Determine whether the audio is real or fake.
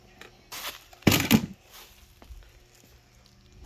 real